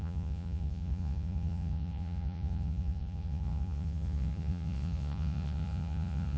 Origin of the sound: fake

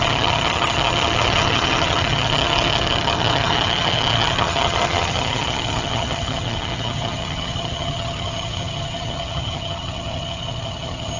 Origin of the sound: fake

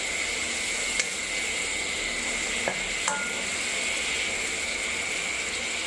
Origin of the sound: real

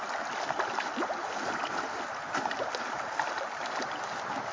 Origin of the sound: real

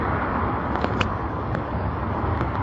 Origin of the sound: fake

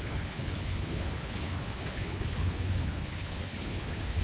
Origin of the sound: fake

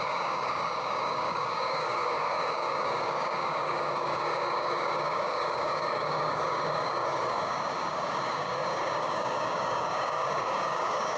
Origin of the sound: fake